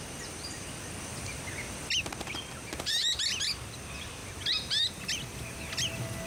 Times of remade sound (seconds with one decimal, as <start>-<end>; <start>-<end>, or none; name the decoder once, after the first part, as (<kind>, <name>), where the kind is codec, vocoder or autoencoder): none